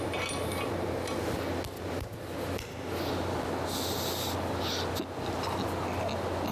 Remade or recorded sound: recorded